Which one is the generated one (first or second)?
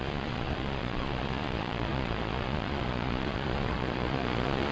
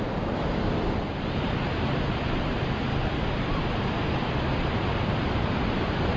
first